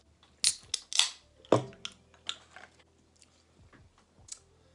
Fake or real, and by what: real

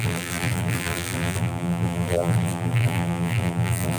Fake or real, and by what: fake, vocoder, BigVGAN v2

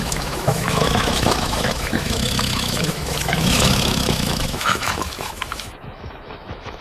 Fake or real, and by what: fake, autoencoder, DAC-VAE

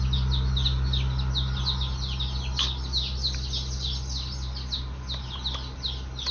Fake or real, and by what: real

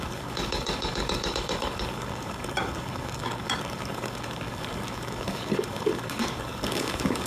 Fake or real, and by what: fake, codec, DAC